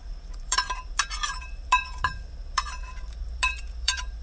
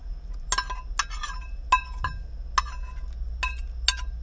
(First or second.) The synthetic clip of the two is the first